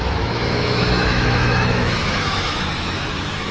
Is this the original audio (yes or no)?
no